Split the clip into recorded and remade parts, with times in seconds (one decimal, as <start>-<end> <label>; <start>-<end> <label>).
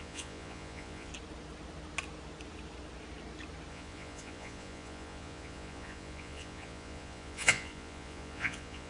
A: 0.0-1.1 remade; 1.1-3.7 recorded; 3.7-8.9 remade